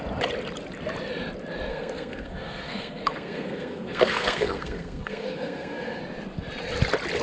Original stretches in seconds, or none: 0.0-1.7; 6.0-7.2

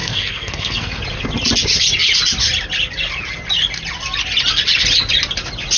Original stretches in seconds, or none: 1.0-5.8